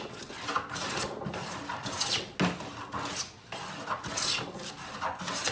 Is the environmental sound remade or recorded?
recorded